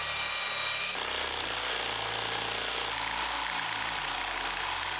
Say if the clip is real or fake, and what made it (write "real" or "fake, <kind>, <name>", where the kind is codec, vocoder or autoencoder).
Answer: real